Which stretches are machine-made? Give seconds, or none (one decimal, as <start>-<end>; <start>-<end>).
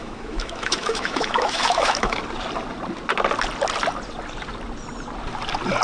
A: 0.0-2.2